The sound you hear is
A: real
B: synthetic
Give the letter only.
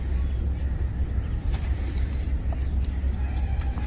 A